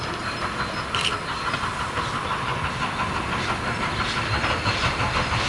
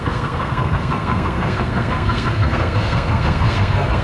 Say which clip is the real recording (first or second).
first